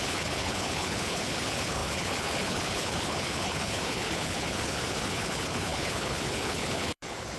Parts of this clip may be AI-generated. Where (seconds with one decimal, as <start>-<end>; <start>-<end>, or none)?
0.0-7.4